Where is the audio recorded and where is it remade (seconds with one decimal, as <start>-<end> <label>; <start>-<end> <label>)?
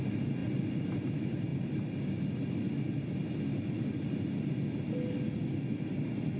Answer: 0.0-6.4 recorded